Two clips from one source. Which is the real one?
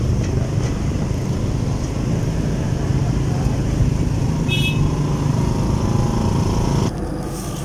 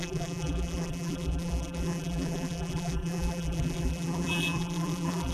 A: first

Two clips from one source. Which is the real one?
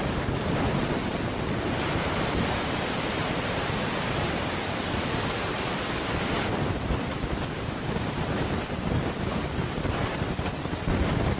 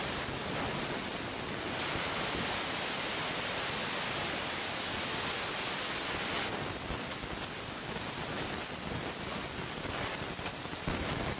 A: second